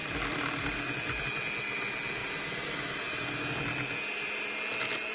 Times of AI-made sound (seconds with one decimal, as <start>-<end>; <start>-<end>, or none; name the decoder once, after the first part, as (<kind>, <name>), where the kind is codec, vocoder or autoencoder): none